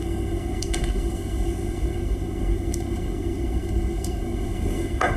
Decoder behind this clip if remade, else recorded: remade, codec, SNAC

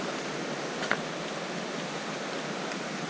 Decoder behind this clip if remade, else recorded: recorded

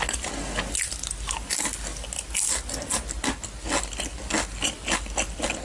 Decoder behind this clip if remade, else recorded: recorded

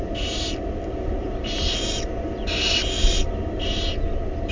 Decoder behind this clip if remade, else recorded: recorded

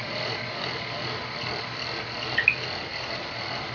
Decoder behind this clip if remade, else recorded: recorded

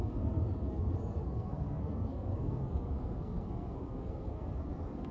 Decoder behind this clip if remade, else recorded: remade, codec, SNAC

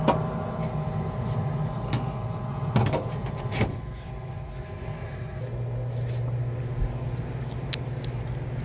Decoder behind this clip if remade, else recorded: recorded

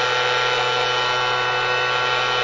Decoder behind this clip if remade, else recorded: recorded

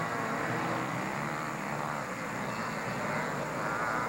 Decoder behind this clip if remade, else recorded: recorded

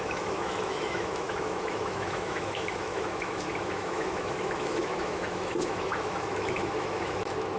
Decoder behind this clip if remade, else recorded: remade, autoencoder, DAC-VAE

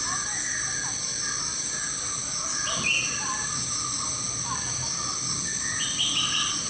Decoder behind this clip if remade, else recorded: recorded